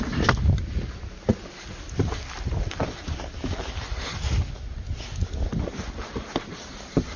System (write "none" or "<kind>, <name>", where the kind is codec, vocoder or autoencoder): none